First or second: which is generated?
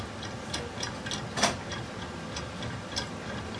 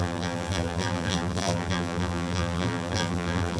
second